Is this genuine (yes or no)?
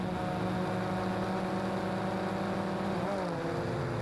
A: yes